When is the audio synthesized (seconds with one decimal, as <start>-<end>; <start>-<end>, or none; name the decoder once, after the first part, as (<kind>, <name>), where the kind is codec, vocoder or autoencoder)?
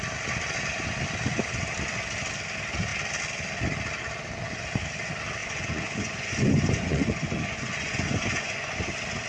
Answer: 5.4-8.8 (vocoder, Vocos)